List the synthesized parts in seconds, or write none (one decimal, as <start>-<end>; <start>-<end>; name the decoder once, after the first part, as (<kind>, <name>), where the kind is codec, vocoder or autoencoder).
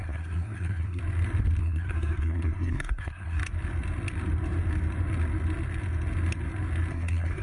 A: 0.0-1.0 (codec, SNAC); 1.6-3.4; 6.9-7.4